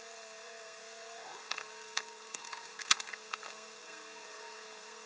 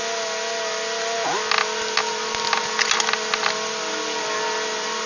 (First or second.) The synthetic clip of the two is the first